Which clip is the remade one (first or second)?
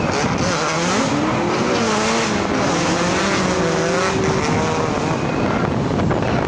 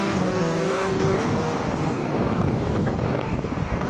second